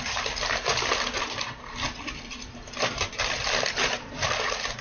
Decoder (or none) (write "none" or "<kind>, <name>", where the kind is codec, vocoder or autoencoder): vocoder, BigVGAN v2